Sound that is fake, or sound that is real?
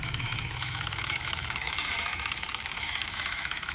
fake